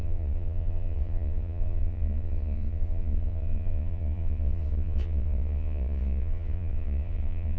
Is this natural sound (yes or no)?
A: no